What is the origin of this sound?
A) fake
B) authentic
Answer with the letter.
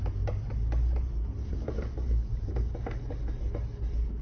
B